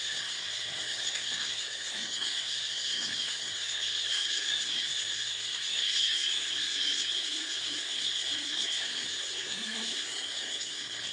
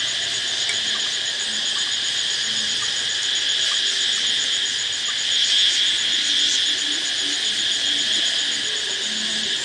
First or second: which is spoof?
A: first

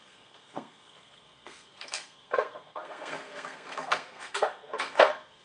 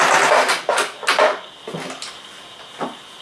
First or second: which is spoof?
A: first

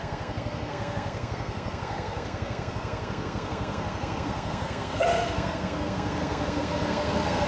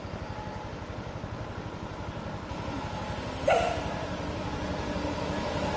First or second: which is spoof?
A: first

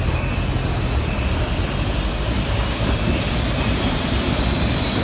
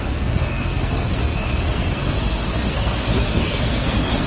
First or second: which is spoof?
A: second